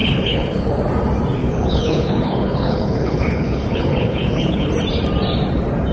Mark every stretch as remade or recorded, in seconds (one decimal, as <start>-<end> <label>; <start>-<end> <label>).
0.0-0.8 remade; 0.8-1.4 recorded; 1.4-4.7 remade; 4.7-5.9 recorded